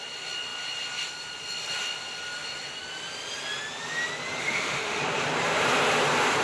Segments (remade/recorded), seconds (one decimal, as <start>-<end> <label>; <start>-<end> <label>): 0.0-4.4 recorded; 4.4-5.0 remade; 5.0-6.4 recorded